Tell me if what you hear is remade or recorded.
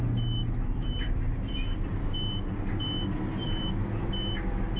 recorded